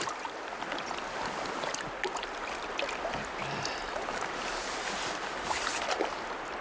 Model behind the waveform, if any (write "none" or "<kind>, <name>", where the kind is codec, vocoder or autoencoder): none